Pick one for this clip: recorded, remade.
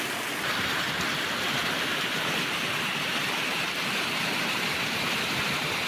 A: remade